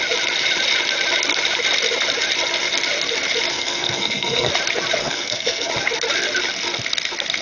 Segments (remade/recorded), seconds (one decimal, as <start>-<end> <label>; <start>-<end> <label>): 0.0-3.5 recorded; 3.5-4.5 remade; 4.5-5.0 recorded; 5.0-5.7 remade; 5.7-7.4 recorded